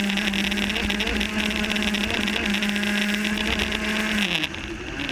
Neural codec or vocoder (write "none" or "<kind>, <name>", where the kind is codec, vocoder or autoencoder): none